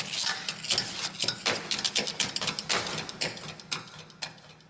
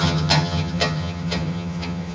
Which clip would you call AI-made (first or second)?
second